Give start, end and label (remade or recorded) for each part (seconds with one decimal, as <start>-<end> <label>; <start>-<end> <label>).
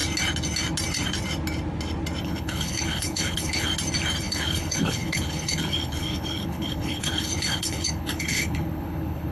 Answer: 0.0-2.2 recorded; 2.2-3.7 remade; 3.7-4.2 recorded; 4.2-9.3 remade